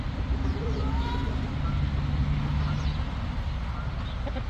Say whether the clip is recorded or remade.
recorded